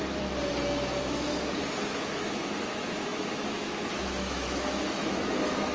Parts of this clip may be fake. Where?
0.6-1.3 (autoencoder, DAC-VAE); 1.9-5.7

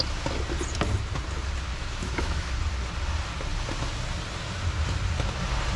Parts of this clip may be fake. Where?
1.8-2.5 (autoencoder, DAC-VAE)

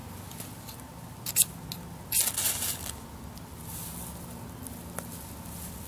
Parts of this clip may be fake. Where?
none

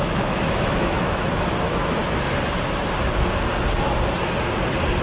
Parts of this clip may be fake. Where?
0.0-2.0 (autoencoder, DAC-VAE)

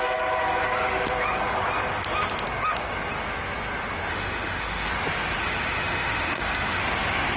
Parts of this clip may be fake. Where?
4.1-4.9 (autoencoder, DAC-VAE); 5.4-6.8

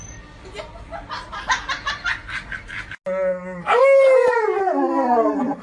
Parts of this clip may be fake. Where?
none